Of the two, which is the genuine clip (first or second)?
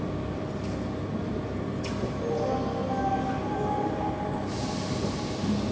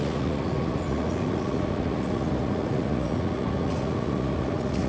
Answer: first